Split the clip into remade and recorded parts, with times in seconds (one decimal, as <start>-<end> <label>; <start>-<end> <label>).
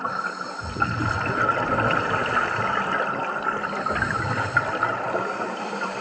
0.0-6.0 recorded